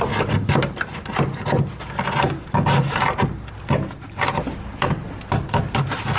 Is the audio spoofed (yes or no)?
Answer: no